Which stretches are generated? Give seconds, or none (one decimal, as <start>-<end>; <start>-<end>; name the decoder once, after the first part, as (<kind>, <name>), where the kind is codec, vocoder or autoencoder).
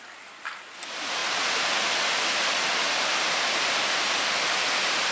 none